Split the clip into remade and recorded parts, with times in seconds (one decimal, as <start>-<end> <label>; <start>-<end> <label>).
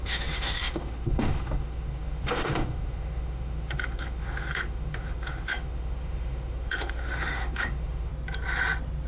0.0-8.1 remade; 8.1-9.1 recorded